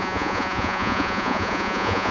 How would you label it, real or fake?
fake